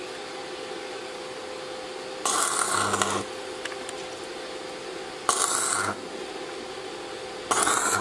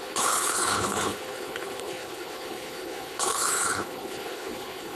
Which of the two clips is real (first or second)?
first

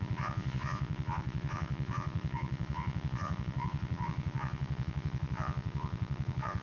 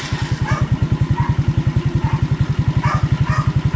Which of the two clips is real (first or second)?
second